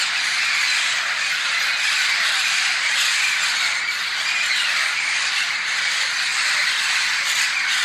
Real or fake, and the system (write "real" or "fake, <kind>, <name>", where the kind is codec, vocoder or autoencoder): fake, vocoder, BigVGAN v2